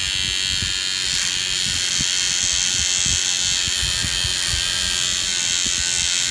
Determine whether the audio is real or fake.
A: real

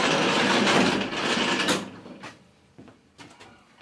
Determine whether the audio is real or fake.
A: fake